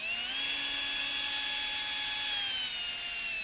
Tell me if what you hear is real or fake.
real